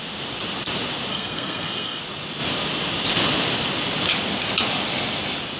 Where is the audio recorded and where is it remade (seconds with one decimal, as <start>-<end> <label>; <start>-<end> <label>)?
0.0-1.1 recorded; 1.1-2.0 remade; 2.0-5.6 recorded